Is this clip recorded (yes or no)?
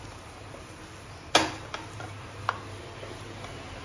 yes